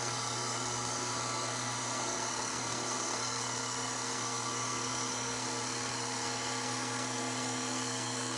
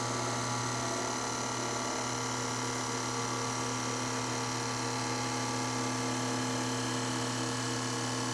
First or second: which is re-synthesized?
first